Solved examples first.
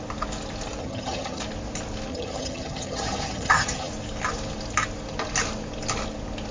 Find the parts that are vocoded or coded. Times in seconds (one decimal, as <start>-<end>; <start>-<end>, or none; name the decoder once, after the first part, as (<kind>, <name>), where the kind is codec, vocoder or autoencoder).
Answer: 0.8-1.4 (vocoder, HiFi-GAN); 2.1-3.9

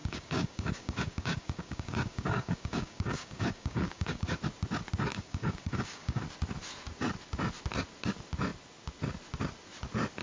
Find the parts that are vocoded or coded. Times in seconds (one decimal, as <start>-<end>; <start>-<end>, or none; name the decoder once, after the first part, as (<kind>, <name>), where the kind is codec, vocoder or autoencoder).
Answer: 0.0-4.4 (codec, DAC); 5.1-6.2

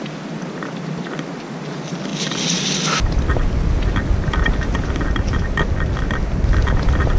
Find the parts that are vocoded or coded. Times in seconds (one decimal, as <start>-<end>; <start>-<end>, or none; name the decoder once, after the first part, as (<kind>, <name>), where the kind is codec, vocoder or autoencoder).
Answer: none